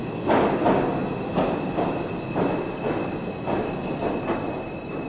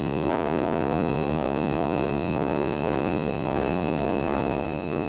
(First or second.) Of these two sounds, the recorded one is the first